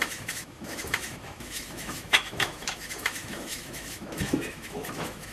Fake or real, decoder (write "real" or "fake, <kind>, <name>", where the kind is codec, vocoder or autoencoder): fake, autoencoder, DAC-VAE